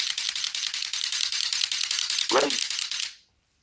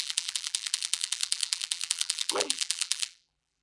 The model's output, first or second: second